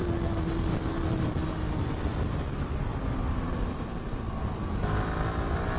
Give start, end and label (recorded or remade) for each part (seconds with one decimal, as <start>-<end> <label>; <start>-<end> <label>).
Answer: 0.0-2.9 recorded; 2.9-3.8 remade; 3.8-5.8 recorded